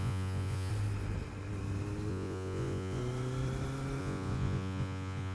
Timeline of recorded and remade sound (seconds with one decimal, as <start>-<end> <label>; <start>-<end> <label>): 0.0-0.7 remade; 0.7-2.1 recorded; 2.1-3.0 remade; 3.0-4.0 recorded; 4.0-5.3 remade